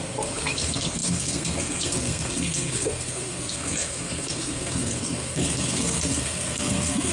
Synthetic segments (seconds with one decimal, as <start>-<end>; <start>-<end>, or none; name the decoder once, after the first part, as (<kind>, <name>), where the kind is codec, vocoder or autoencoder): 0.0-7.1 (codec, SNAC)